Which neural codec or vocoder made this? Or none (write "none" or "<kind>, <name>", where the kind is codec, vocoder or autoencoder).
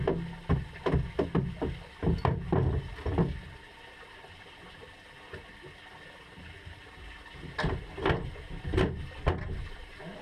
none